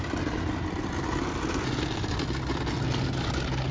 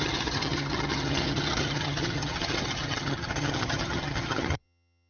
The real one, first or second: first